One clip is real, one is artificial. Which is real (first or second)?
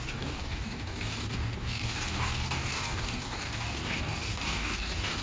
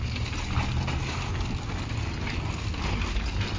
second